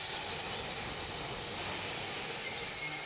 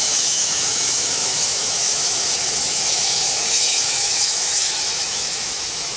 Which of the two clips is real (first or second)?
first